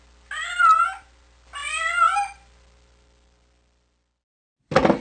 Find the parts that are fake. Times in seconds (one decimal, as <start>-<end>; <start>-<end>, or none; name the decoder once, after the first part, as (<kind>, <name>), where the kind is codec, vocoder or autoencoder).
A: none